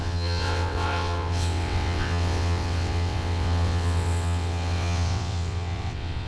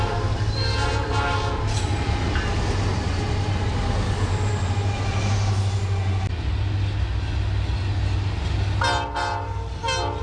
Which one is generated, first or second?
first